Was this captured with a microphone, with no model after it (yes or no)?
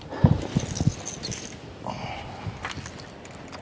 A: yes